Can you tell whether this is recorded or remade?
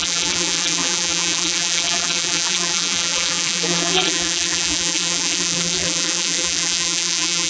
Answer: remade